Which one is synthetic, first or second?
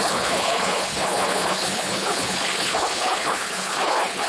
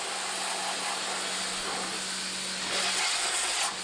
first